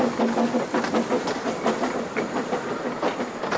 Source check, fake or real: real